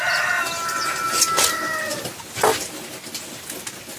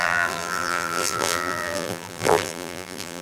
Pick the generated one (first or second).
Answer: second